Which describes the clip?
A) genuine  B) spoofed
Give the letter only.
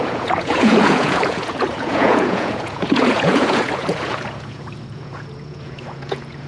B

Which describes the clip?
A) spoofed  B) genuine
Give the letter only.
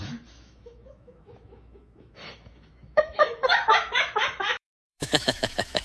A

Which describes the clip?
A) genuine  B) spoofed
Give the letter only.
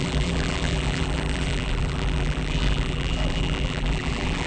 B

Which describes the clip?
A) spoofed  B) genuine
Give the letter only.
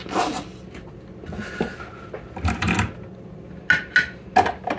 B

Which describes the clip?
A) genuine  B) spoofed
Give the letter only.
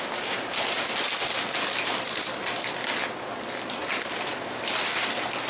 A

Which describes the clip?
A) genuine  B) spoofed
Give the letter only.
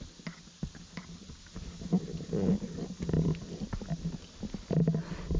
A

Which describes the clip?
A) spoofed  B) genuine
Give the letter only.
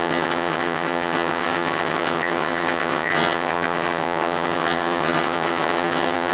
A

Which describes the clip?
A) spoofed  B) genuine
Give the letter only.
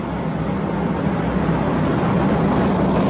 B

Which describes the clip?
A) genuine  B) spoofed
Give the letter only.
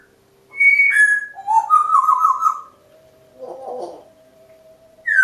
A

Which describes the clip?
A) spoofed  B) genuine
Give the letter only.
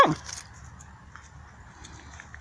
B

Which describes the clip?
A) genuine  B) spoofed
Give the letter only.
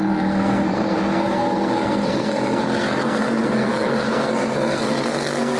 B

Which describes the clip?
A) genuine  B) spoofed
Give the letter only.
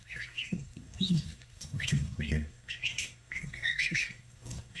B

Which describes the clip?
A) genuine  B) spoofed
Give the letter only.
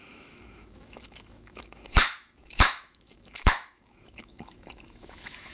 B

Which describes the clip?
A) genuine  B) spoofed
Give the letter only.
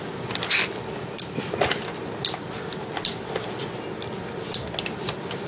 A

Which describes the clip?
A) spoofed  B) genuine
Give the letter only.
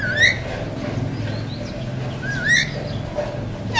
B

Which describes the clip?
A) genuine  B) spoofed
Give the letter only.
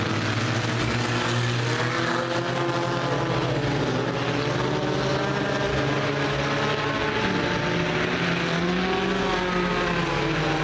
A